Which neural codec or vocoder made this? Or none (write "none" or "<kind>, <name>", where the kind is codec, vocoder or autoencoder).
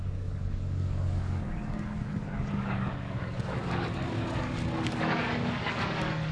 codec, DAC